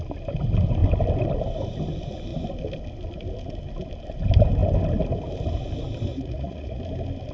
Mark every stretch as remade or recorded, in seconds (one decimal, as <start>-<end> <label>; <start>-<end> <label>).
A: 0.0-6.1 recorded; 6.1-6.8 remade; 6.8-7.3 recorded